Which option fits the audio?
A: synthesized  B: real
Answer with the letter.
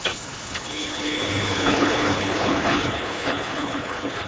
A